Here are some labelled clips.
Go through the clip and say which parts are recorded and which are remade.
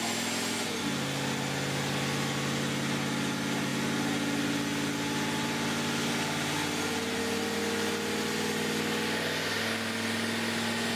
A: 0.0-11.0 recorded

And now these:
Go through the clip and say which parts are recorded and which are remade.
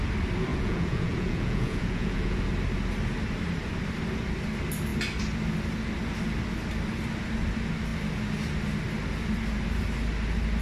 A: 0.0-0.5 recorded; 0.5-2.4 remade; 2.4-10.6 recorded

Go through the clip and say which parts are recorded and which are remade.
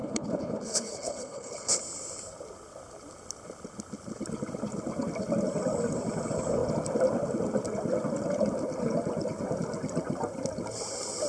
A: 0.0-1.8 remade; 1.8-11.3 recorded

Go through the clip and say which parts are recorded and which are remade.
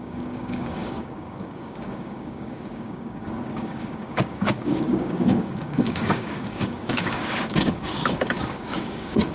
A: 0.0-9.3 remade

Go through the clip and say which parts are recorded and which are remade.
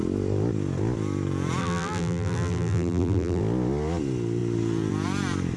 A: 0.0-1.6 recorded; 1.6-3.4 remade; 3.4-5.6 recorded